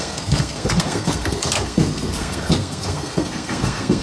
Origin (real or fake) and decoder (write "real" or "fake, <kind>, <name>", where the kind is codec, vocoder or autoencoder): fake, codec, SNAC